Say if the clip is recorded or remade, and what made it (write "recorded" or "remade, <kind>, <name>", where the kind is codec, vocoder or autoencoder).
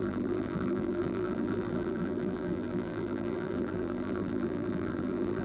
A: remade, vocoder, BigVGAN v2